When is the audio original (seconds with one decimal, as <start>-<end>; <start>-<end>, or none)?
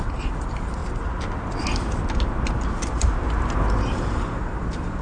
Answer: 0.8-3.8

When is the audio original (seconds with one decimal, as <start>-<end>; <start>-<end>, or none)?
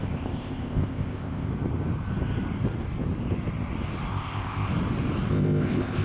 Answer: 1.5-4.1; 4.7-5.3